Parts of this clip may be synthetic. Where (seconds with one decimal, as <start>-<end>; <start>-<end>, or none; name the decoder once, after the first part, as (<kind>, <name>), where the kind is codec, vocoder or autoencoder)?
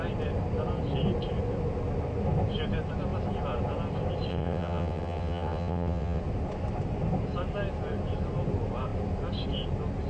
4.3-6.2 (vocoder, WaveNeXt)